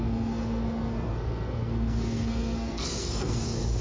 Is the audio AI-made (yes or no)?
yes